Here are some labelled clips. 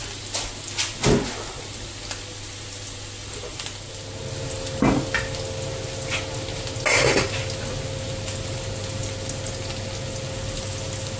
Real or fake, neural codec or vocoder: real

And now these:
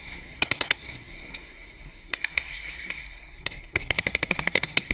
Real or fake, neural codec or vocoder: fake, codec, SNAC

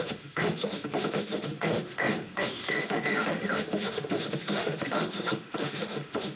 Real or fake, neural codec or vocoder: fake, autoencoder, DAC-VAE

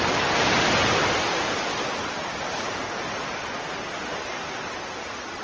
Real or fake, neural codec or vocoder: real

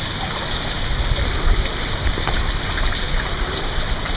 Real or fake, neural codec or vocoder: real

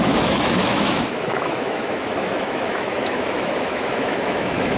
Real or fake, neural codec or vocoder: fake, autoencoder, DAC-VAE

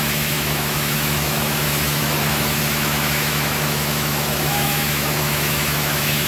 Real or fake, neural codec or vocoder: fake, autoencoder, DAC-VAE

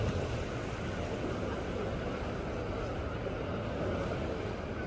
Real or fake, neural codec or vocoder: real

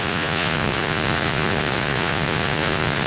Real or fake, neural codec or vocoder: fake, vocoder, Vocos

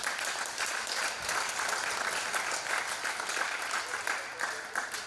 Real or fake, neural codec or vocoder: real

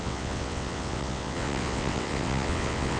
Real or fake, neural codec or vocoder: fake, vocoder, WaveNeXt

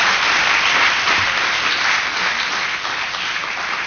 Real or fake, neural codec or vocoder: real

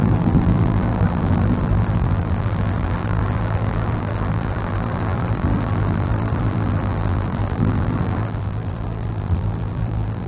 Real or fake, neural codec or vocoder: fake, vocoder, BigVGAN v2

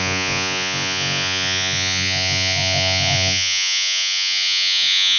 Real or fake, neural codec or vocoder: fake, vocoder, Vocos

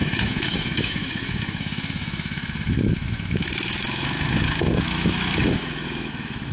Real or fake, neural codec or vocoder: fake, autoencoder, DAC-VAE